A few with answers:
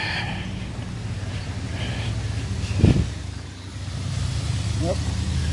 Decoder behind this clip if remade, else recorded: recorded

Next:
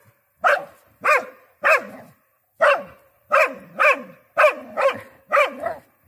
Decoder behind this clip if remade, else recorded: recorded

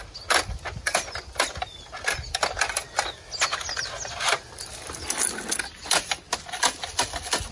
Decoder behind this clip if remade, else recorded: recorded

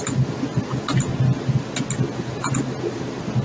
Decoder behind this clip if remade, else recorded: recorded